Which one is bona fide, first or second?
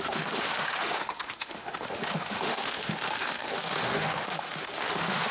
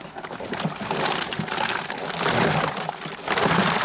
second